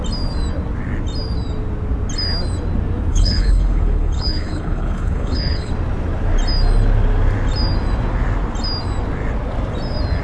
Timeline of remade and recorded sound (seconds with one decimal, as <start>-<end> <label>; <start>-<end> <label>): 0.0-3.1 recorded; 3.1-5.7 remade; 5.7-10.2 recorded